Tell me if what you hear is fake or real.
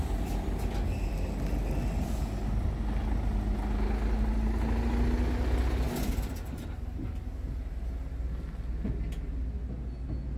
real